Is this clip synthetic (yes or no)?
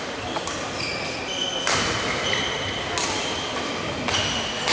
no